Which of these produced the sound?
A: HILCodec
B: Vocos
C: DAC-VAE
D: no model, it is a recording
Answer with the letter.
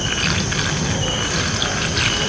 D